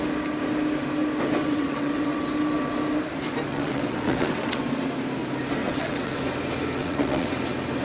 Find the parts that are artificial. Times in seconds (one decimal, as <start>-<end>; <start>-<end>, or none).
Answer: 1.4-2.2; 3.5-4.6; 5.6-6.2; 6.8-7.3